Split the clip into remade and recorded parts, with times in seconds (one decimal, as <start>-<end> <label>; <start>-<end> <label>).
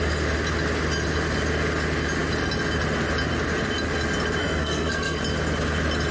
0.0-4.4 recorded; 4.4-5.2 remade; 5.2-6.1 recorded